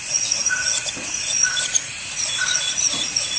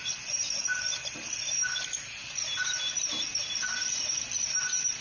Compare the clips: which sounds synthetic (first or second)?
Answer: first